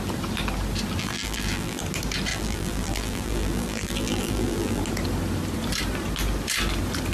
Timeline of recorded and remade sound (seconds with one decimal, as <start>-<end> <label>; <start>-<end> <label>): 0.0-1.0 recorded; 1.0-1.8 remade; 1.8-2.3 recorded; 2.3-4.8 remade; 4.8-7.1 recorded